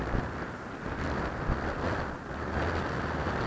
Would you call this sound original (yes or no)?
yes